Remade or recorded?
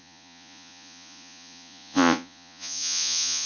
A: remade